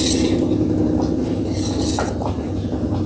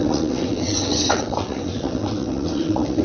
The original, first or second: first